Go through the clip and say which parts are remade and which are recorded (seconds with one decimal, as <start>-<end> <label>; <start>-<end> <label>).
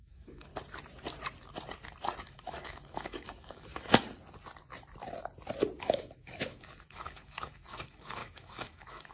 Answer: 0.0-0.5 remade; 0.5-2.2 recorded; 2.2-3.9 remade; 3.9-5.8 recorded; 5.8-9.1 remade